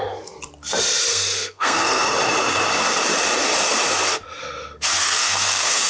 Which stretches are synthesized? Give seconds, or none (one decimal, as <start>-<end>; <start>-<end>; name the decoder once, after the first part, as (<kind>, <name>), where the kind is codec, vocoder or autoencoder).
1.1-2.1 (codec, SNAC); 5.0-5.9